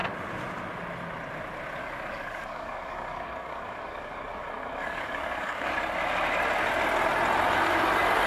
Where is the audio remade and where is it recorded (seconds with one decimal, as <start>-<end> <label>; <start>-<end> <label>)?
0.0-1.8 recorded; 1.8-5.7 remade; 5.7-8.3 recorded